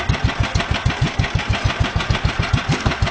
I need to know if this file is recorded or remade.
recorded